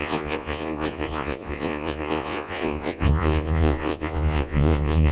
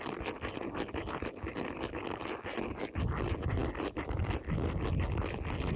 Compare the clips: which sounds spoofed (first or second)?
first